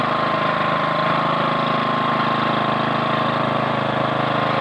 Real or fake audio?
real